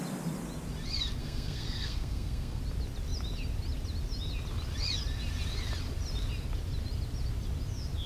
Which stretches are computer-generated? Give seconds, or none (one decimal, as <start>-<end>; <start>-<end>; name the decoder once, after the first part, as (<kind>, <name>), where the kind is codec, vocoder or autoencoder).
1.2-2.6 (codec, SNAC)